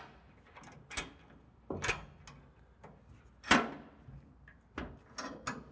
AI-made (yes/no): no